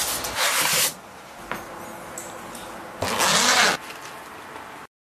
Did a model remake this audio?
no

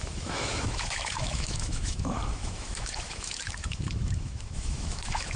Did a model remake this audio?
yes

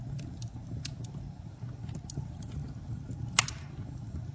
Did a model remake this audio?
no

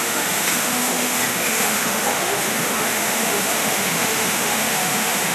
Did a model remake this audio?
yes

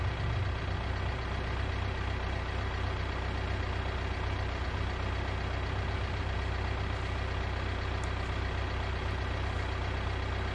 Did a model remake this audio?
no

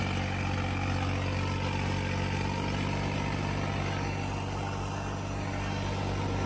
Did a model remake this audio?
no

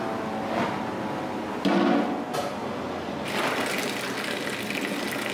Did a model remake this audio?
no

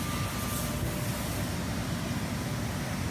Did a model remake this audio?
no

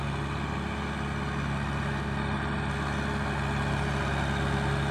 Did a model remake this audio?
no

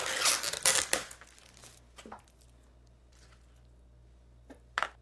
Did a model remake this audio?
no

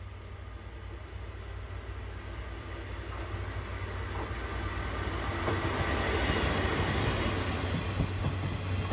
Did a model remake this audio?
no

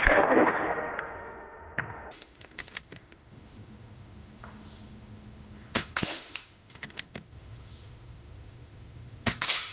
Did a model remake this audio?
yes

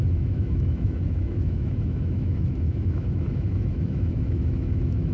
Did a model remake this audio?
yes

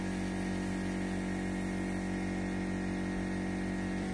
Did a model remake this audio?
no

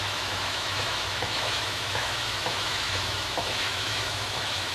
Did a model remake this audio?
yes